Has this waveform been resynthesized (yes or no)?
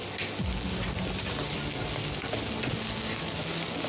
no